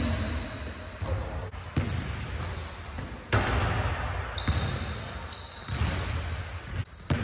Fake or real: real